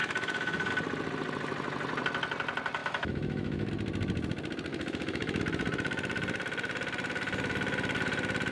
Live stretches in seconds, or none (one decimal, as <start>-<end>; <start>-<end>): 0.7-2.8; 3.7-4.7; 5.4-8.5